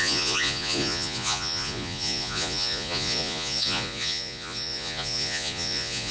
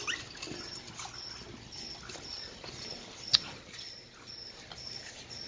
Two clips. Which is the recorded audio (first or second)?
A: second